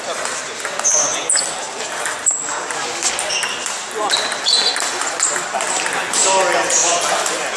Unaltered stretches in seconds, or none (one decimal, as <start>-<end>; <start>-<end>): 0.0-7.6